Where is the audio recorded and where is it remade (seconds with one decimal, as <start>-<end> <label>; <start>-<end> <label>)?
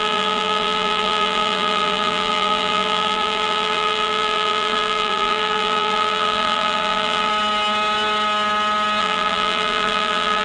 0.0-7.3 remade; 7.3-9.0 recorded; 9.0-10.4 remade